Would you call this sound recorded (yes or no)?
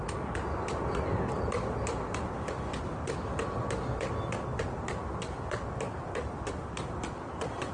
yes